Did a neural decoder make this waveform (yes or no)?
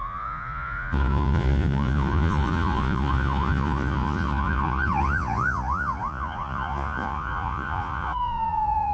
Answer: yes